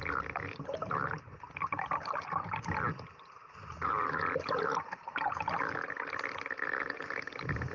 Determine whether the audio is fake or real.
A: real